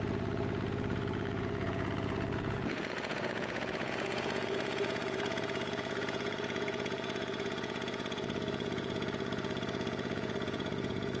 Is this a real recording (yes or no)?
no